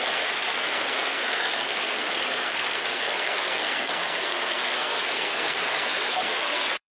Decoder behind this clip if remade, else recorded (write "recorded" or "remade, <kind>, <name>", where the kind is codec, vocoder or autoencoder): remade, codec, SNAC